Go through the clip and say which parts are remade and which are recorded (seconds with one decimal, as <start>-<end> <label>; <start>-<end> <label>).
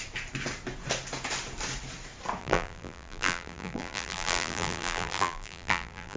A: 0.0-2.4 recorded; 2.4-6.2 remade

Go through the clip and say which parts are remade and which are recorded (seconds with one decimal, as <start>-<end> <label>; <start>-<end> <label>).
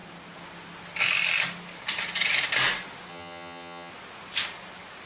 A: 0.0-3.1 recorded; 3.1-3.9 remade; 3.9-5.1 recorded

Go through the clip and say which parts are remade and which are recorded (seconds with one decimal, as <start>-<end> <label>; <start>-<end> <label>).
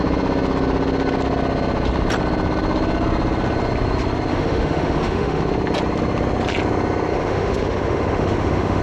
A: 0.0-4.3 recorded; 4.3-5.4 remade; 5.4-7.1 recorded; 7.1-8.8 remade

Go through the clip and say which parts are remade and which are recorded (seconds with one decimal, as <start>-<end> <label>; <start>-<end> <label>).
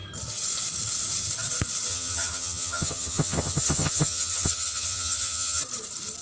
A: 0.0-1.9 recorded; 1.9-5.6 remade; 5.6-6.2 recorded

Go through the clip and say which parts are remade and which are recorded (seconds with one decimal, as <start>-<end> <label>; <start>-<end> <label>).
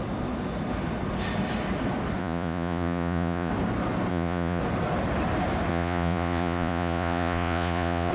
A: 0.0-2.2 recorded; 2.2-3.5 remade; 3.5-4.1 recorded; 4.1-4.6 remade; 4.6-5.7 recorded; 5.7-8.1 remade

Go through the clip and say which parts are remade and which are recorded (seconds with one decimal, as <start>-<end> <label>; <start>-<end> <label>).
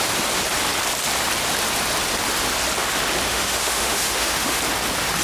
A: 0.0-3.3 recorded; 3.3-4.6 remade; 4.6-5.2 recorded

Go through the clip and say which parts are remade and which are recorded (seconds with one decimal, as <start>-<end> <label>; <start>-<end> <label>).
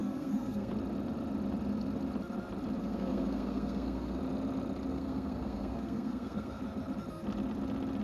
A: 0.0-0.7 remade; 0.7-2.8 recorded; 2.8-4.2 remade; 4.2-4.9 recorded; 4.9-6.6 remade; 6.6-8.0 recorded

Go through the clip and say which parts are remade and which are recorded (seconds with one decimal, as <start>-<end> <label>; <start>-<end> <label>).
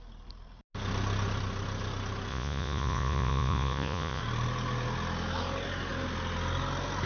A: 0.0-2.3 recorded; 2.3-4.2 remade; 4.2-7.1 recorded